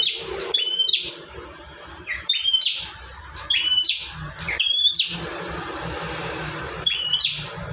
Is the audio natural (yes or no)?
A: no